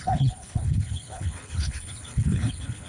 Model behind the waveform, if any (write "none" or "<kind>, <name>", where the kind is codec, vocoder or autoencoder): codec, HILCodec